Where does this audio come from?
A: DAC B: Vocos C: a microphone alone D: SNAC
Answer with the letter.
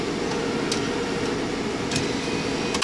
C